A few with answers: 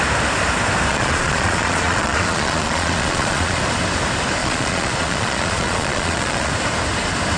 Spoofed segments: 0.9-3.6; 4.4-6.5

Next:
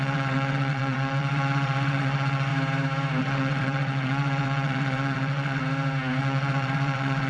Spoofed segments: 0.0-2.5; 3.2-5.6; 6.2-7.3

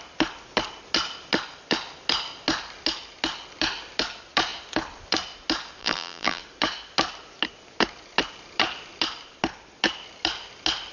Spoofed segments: 5.8-6.4